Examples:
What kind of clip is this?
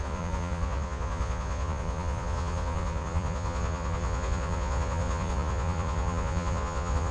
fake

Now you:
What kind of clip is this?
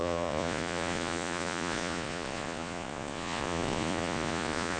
fake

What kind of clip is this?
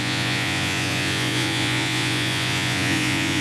fake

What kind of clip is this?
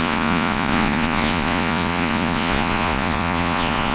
fake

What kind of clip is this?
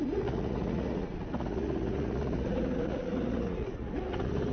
fake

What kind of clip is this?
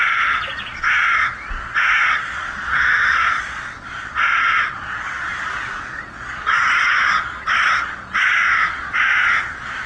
fake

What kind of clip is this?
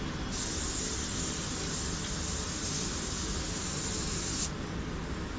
real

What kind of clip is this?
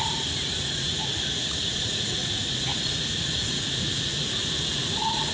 fake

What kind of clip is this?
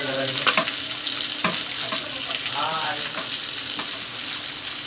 real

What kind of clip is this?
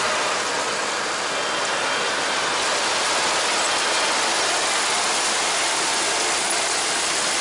real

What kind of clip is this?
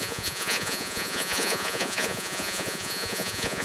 fake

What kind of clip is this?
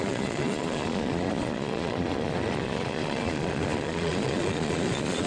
fake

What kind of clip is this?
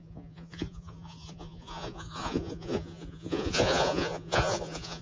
fake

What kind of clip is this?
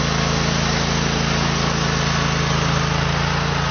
real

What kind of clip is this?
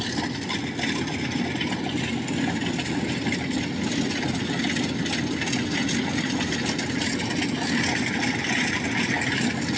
real